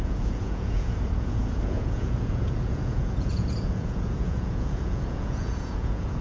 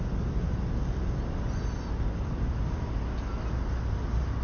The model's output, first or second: first